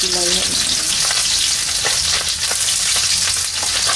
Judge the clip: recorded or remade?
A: recorded